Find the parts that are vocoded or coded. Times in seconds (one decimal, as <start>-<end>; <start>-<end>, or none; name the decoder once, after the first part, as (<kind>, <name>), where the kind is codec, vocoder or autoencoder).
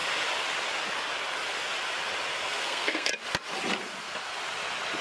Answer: 2.3-3.1 (codec, SNAC)